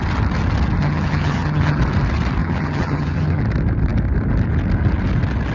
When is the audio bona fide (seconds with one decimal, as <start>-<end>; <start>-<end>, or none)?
0.0-0.8; 1.8-2.4; 3.4-5.5